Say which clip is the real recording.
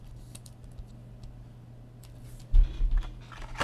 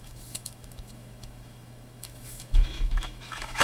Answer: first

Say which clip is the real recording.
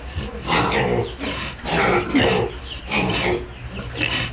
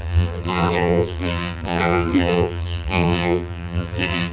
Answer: first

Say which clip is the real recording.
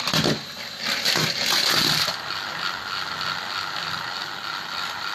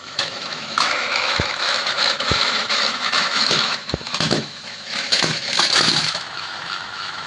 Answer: first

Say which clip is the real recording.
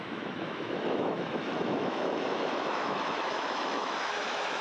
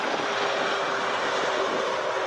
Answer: second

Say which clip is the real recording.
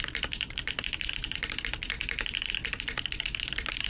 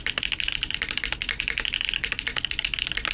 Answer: second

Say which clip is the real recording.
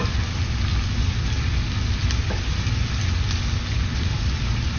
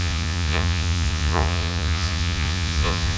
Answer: first